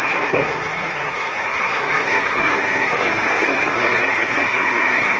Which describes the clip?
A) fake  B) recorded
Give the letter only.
A